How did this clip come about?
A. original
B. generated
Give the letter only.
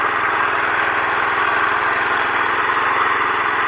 B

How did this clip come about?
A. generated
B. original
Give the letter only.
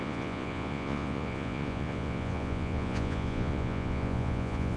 A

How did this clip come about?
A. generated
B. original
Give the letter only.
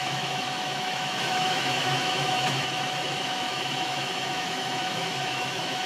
A